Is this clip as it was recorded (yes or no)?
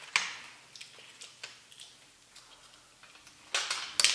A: yes